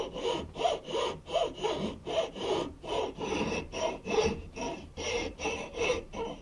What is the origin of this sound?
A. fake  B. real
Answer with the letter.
A